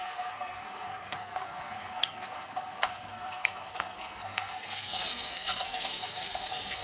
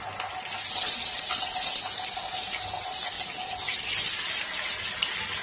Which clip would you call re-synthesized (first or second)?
first